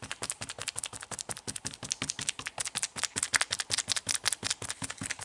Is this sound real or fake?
real